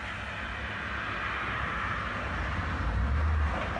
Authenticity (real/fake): real